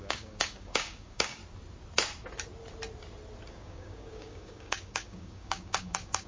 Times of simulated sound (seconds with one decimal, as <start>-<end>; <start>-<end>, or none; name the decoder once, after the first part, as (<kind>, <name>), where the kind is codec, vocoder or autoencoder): 0.0-1.4 (codec, DAC); 3.5-6.3

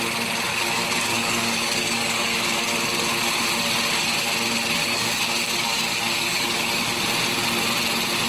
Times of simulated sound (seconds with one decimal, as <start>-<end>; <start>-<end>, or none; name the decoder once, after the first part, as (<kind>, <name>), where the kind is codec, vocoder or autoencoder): 0.5-2.7 (codec, DAC); 4.8-7.0